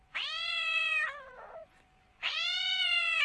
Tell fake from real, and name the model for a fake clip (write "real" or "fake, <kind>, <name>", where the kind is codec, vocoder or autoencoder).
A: fake, vocoder, Vocos